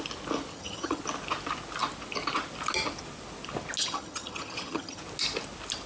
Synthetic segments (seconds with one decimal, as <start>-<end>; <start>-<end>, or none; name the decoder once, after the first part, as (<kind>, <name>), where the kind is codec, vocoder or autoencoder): 0.5-1.0 (vocoder, HiFi-GAN); 3.8-5.0

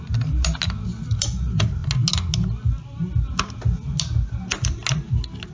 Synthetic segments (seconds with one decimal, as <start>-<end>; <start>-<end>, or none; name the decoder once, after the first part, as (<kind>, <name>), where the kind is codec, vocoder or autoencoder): none

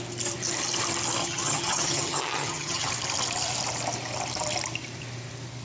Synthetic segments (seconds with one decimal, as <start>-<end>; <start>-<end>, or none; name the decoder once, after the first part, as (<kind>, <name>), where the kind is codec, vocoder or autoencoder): 1.2-2.9 (vocoder, HiFi-GAN)

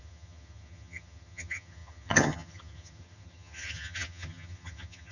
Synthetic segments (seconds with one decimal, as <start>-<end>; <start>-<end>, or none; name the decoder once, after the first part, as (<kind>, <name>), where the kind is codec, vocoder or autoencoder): 0.0-5.1 (vocoder, HiFi-GAN)

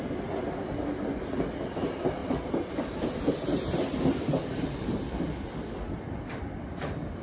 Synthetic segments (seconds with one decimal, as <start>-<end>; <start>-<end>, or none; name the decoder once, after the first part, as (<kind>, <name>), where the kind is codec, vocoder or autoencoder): none